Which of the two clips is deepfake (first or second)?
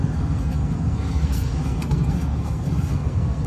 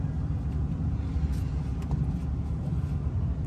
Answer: first